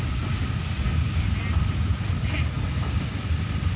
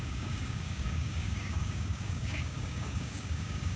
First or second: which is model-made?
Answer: second